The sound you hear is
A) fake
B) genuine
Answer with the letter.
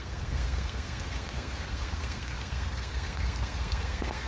A